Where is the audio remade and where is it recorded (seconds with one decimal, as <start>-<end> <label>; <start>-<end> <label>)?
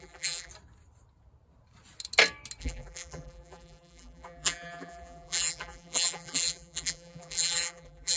0.0-0.5 remade; 0.5-2.6 recorded; 2.6-8.2 remade